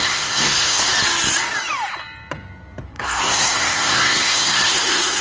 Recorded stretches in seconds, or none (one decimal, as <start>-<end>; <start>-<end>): 0.9-2.8